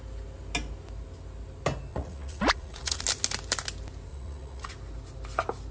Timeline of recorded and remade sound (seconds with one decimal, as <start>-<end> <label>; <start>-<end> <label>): 0.0-1.9 recorded; 1.9-3.0 remade; 3.0-4.1 recorded; 4.1-4.7 remade; 4.7-5.7 recorded